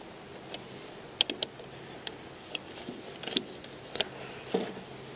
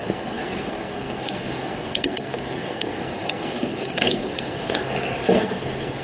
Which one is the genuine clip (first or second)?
first